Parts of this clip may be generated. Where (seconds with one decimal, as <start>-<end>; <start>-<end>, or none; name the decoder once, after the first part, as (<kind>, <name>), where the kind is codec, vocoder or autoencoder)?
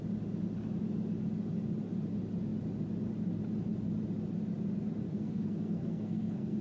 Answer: 5.1-6.6 (codec, SNAC)